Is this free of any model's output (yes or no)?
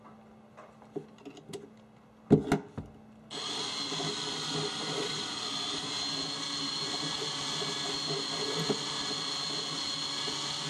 yes